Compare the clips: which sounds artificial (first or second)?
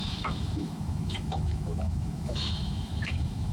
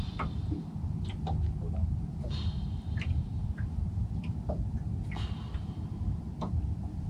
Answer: first